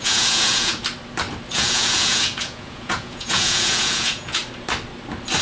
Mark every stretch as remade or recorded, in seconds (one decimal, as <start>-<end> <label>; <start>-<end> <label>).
0.0-0.8 remade; 0.8-1.5 recorded; 1.5-4.4 remade; 4.4-5.4 recorded